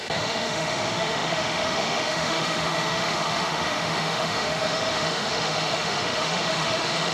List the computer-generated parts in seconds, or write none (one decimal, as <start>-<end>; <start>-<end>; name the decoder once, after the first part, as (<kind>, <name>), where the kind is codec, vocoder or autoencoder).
0.0-7.1 (autoencoder, DAC-VAE)